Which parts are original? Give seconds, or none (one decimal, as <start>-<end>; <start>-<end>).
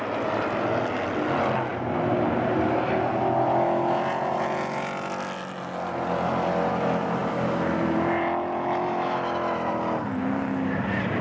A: 0.0-11.2